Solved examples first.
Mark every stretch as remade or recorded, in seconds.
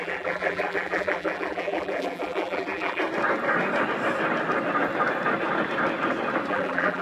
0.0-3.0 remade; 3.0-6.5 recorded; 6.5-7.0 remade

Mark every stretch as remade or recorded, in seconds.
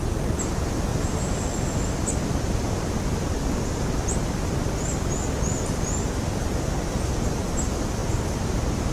0.0-8.9 recorded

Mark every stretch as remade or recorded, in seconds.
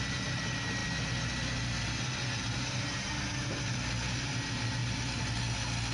0.0-5.9 recorded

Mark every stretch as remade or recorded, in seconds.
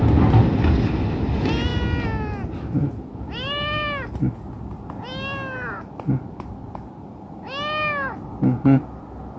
0.0-9.4 recorded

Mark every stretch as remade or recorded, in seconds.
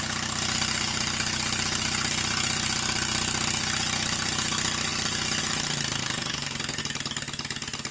0.0-6.0 recorded; 6.0-6.8 remade; 6.8-7.9 recorded